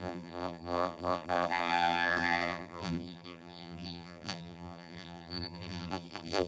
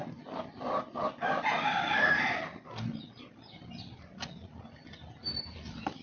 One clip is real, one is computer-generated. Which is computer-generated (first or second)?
first